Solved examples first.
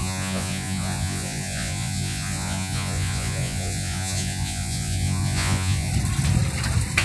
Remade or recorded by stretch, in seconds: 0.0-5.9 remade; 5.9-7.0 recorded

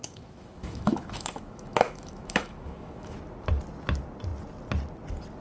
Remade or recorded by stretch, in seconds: 0.0-3.2 remade; 3.2-5.4 recorded